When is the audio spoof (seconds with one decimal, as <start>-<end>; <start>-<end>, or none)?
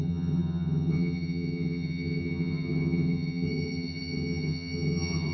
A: 0.0-5.3